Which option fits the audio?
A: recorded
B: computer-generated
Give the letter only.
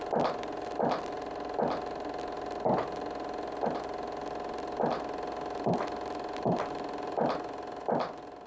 A